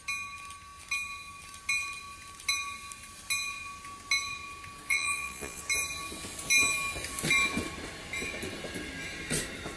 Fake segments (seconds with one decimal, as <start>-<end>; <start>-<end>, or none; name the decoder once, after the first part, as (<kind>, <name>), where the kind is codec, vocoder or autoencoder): 4.9-5.6 (vocoder, Vocos)